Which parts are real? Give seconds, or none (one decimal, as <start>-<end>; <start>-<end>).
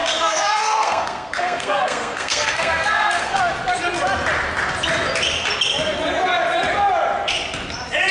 3.4-8.1